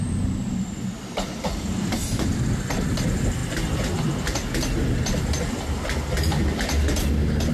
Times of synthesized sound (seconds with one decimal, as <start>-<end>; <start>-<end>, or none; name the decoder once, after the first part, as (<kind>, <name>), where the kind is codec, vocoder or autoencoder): 0.0-3.4 (vocoder, BigVGAN v2)